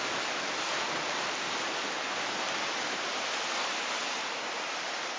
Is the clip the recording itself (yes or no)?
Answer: yes